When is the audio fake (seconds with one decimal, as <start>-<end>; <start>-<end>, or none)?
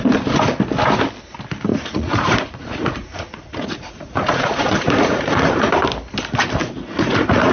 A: 1.7-5.7; 6.6-7.5